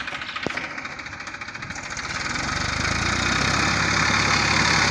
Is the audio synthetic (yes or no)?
no